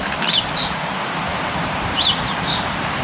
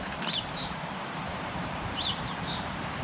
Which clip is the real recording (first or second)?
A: first